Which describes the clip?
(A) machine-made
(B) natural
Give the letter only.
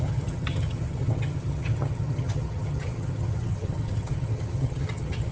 A